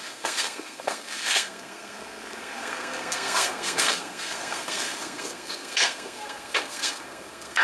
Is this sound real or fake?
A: fake